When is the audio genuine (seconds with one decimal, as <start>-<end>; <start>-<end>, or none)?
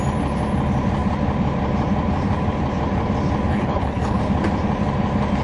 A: 0.0-3.5; 4.2-5.4